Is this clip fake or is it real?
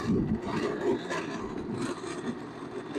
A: real